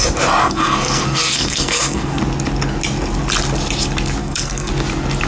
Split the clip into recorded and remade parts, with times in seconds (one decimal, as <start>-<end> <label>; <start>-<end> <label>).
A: 0.0-0.4 recorded; 0.4-2.2 remade; 2.2-4.2 recorded; 4.2-4.7 remade; 4.7-5.3 recorded